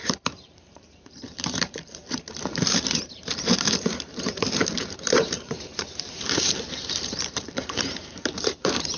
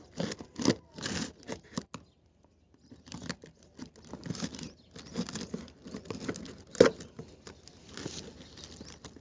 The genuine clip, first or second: second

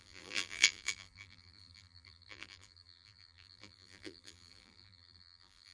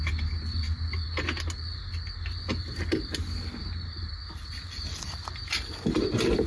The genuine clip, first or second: second